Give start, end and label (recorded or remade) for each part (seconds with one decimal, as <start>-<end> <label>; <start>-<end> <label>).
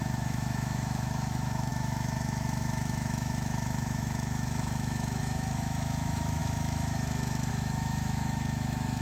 0.0-9.0 remade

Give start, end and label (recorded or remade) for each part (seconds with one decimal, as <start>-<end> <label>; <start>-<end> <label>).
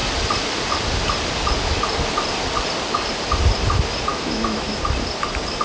0.0-4.1 recorded; 4.1-4.8 remade; 4.8-5.6 recorded